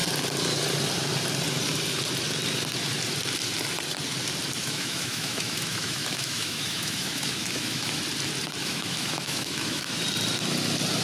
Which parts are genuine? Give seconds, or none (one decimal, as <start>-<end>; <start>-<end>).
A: 0.0-4.6; 8.0-8.6; 10.0-11.0